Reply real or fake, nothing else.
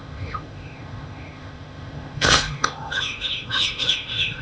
fake